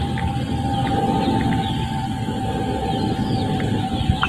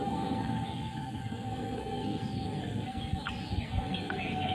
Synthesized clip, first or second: second